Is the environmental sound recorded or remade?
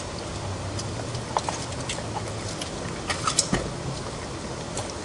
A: recorded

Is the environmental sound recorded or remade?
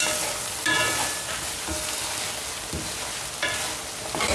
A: recorded